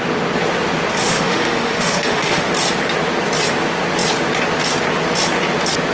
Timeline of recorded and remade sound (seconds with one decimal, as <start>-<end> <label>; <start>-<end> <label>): 0.0-1.0 recorded; 1.0-2.5 remade; 2.5-5.9 recorded